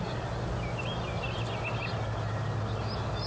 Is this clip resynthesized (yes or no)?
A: no